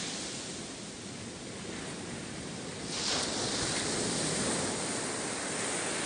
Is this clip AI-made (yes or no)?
no